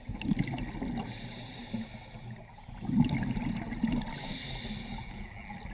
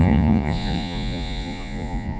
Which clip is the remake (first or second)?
second